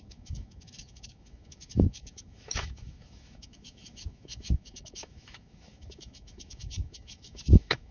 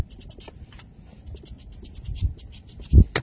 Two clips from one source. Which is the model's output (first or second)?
first